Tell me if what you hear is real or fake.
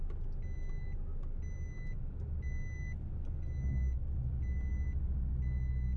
real